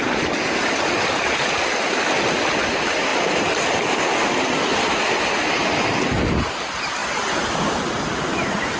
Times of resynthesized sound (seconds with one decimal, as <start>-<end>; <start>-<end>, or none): none